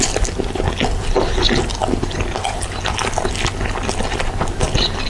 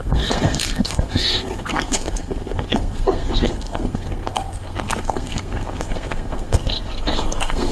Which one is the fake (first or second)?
second